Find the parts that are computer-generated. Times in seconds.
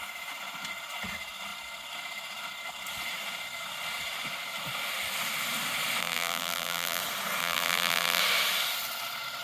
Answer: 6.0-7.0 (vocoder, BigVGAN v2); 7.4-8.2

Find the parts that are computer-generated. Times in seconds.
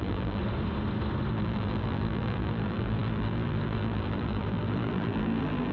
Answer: 0.0-0.4 (vocoder, BigVGAN v2); 1.3-5.7